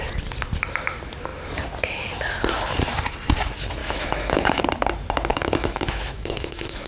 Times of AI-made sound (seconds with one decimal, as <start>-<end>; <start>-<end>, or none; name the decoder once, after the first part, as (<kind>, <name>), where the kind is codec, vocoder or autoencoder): 3.8-4.6 (autoencoder, DAC-VAE); 5.3-6.9